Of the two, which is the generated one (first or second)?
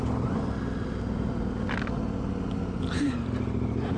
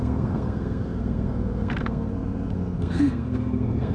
second